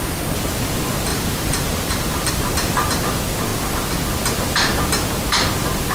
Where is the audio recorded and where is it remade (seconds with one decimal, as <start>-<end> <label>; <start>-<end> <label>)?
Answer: 0.0-1.1 recorded; 1.1-2.3 remade; 2.3-5.9 recorded

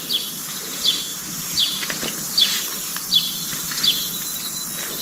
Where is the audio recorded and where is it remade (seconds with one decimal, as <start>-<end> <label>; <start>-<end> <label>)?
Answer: 0.0-1.1 recorded; 1.1-1.9 remade; 1.9-2.9 recorded; 2.9-3.8 remade; 3.8-5.0 recorded

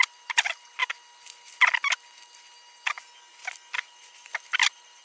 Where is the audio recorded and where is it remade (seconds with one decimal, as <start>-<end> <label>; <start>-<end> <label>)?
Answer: 0.0-0.8 remade; 0.8-3.8 recorded; 3.8-5.0 remade